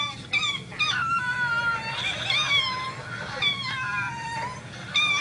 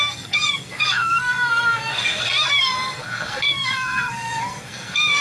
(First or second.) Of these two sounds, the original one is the first